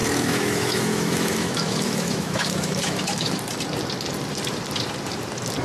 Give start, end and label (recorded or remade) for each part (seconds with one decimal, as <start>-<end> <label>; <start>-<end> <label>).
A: 0.0-3.4 remade; 3.4-5.6 recorded